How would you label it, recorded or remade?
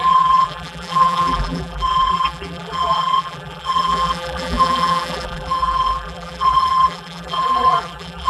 remade